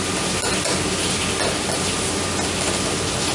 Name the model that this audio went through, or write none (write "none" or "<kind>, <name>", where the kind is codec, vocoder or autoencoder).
none